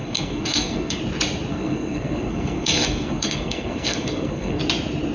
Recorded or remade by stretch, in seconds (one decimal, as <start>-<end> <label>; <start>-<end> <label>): 0.0-1.0 remade; 1.0-1.5 recorded; 1.5-4.6 remade; 4.6-5.1 recorded